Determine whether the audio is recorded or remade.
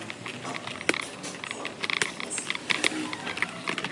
recorded